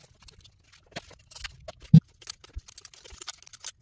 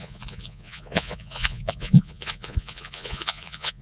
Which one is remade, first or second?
second